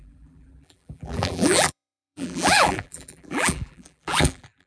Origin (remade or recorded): remade